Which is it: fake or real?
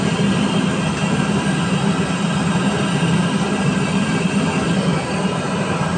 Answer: real